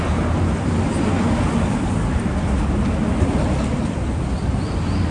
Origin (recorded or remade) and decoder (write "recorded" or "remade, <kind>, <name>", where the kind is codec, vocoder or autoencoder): recorded